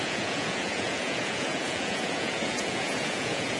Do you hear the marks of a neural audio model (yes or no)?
yes